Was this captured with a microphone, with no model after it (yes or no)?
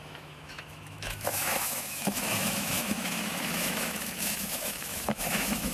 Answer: no